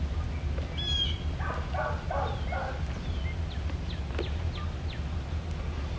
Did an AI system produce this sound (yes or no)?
no